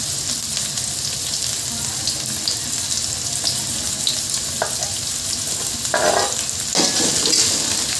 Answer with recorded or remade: recorded